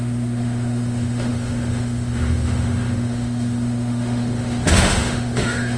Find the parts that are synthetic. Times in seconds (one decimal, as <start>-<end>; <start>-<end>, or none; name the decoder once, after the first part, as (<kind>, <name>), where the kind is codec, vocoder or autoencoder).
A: 0.0-5.8 (autoencoder, DAC-VAE)